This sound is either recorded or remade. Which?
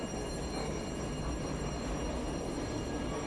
recorded